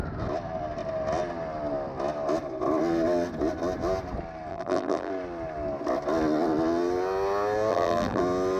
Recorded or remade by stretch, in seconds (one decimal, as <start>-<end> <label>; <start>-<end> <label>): 0.0-4.5 recorded; 4.5-5.1 remade; 5.1-7.7 recorded; 7.7-8.2 remade; 8.2-8.6 recorded